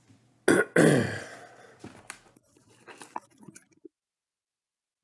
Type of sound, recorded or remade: recorded